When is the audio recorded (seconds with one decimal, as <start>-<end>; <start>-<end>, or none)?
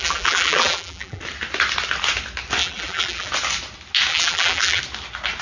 1.2-2.6; 3.3-4.1; 4.8-5.4